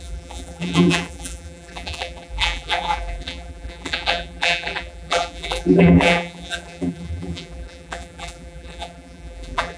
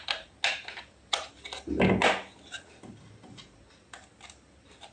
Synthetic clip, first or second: first